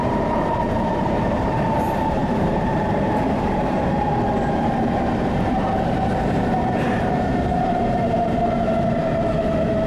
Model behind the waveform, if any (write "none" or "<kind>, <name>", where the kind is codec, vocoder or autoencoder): vocoder, BigVGAN v2